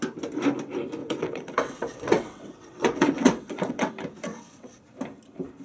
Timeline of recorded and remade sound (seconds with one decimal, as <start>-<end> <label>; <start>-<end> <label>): 0.0-1.0 recorded; 1.0-3.9 remade; 3.9-4.3 recorded; 4.3-4.8 remade; 4.8-5.6 recorded